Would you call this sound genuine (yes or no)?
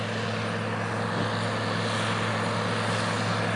yes